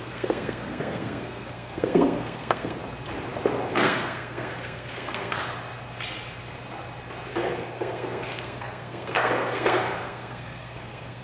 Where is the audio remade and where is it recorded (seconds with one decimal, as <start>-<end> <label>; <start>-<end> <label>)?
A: 0.0-2.8 remade; 2.8-3.7 recorded; 3.7-5.4 remade; 5.4-7.3 recorded; 7.3-11.2 remade